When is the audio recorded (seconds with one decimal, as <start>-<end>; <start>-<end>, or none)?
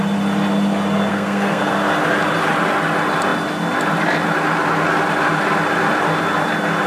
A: 0.0-1.1; 1.7-6.9